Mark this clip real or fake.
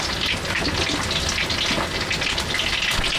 real